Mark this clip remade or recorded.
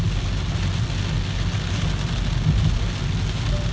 recorded